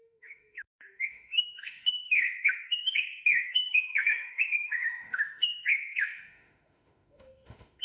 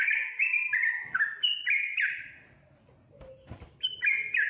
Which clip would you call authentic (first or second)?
second